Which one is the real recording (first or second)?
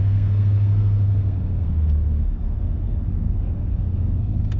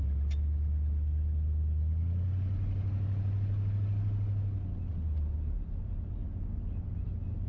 second